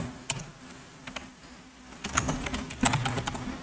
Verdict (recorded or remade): recorded